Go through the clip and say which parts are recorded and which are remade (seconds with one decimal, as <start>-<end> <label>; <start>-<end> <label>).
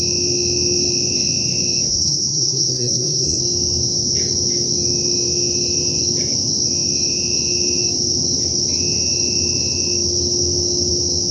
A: 0.0-1.9 recorded; 1.9-3.4 remade; 3.4-11.3 recorded